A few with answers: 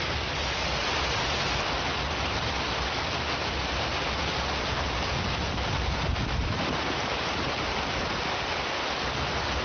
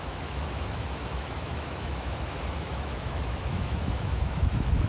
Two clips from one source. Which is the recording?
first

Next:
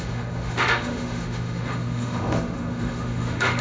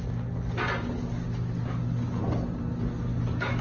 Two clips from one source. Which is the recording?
second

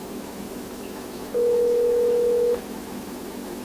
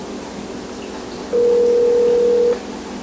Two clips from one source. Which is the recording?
second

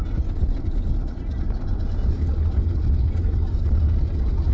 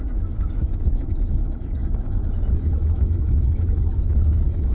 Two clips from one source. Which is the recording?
first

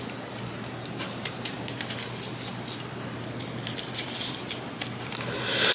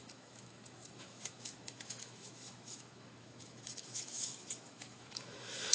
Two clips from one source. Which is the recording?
first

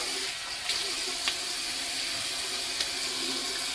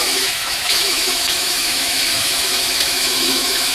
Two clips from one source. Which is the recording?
first